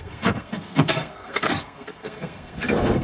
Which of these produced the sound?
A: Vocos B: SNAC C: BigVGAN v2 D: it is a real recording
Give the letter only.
B